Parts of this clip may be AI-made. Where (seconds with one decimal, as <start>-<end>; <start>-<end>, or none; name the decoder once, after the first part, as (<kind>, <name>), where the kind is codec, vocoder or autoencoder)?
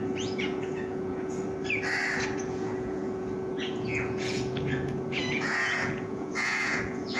0.0-1.4 (vocoder, Vocos); 2.4-7.2